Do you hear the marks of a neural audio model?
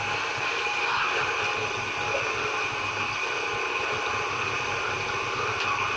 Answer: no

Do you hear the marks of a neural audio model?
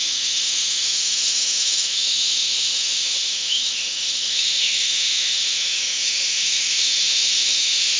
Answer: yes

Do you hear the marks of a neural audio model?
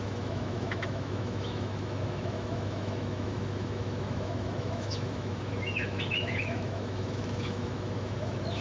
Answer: yes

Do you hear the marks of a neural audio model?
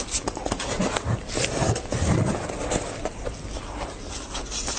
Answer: no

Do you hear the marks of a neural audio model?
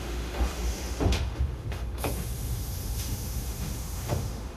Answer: yes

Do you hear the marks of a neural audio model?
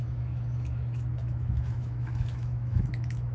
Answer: yes